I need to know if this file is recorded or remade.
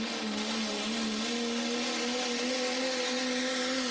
recorded